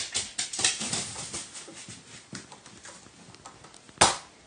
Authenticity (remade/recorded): recorded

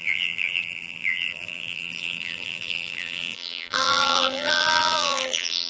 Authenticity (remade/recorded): remade